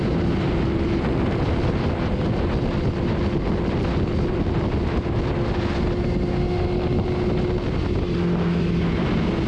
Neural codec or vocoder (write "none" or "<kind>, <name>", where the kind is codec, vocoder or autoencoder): none